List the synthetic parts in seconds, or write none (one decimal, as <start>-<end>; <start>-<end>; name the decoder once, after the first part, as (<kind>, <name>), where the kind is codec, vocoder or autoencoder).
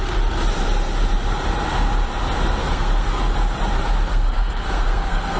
2.6-3.2 (codec, SNAC); 4.1-5.4